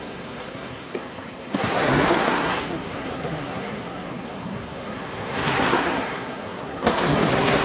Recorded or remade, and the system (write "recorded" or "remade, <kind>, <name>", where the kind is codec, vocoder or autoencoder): remade, codec, SNAC